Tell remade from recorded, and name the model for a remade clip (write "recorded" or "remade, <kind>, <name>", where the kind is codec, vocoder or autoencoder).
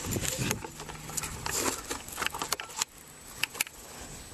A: recorded